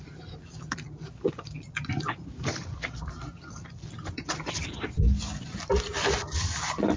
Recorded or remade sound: remade